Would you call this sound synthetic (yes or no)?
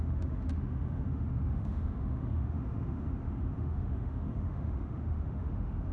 yes